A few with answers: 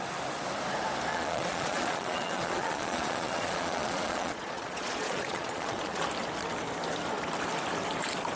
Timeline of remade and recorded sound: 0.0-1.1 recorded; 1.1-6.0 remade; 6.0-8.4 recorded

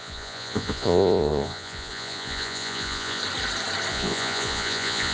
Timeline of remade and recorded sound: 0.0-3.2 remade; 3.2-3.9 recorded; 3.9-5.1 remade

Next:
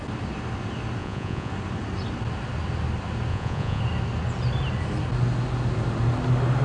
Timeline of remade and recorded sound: 0.0-1.0 recorded; 1.0-1.5 remade; 1.5-3.3 recorded; 3.3-3.8 remade; 3.8-6.6 recorded

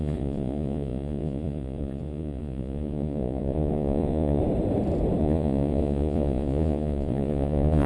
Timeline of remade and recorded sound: 0.0-4.4 remade; 4.4-5.2 recorded; 5.2-7.9 remade